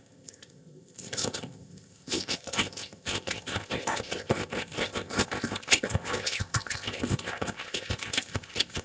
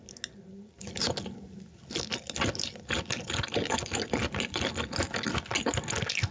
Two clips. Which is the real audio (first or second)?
second